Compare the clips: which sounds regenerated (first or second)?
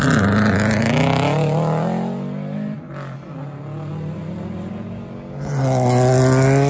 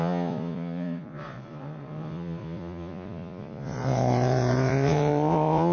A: second